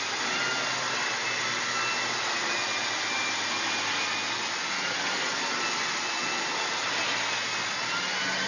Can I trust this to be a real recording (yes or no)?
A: yes